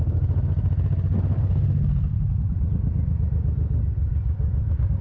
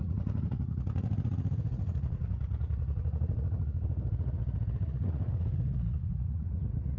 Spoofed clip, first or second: second